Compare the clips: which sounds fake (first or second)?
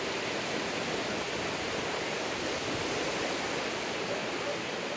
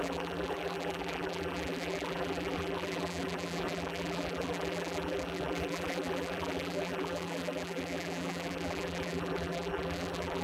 second